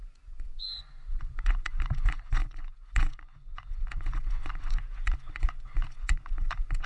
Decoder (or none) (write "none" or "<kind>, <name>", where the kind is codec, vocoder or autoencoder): vocoder, Vocos